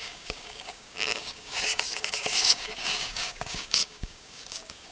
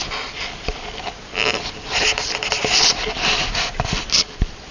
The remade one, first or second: first